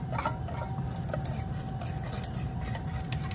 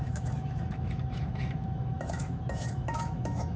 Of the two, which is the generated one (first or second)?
second